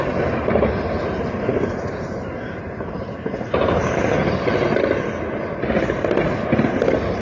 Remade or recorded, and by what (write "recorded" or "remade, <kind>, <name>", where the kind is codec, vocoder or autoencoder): recorded